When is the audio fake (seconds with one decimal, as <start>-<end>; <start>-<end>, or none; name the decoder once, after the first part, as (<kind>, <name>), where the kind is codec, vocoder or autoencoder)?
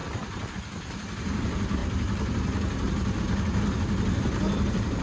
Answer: none